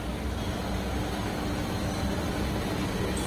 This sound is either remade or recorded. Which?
recorded